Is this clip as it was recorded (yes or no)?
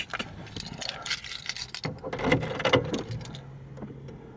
yes